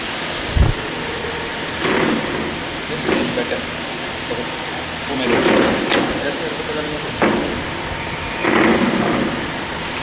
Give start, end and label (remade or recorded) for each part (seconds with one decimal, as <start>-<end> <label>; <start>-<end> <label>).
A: 0.0-10.0 recorded